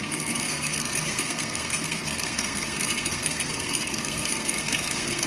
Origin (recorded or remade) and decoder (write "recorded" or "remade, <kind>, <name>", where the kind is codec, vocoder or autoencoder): remade, codec, SNAC